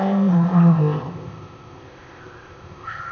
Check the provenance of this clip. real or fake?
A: fake